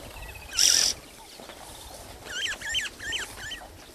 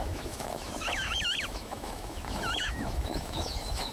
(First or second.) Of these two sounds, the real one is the first